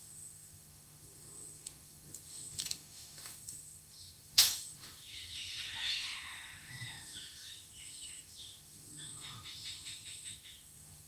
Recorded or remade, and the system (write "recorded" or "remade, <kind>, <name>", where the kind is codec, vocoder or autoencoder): remade, autoencoder, DAC-VAE